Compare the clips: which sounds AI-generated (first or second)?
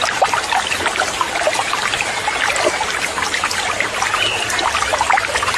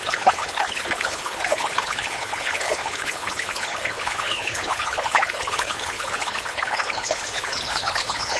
second